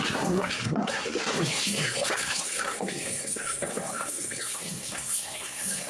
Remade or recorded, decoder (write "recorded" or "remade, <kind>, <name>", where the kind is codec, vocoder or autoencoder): remade, codec, SNAC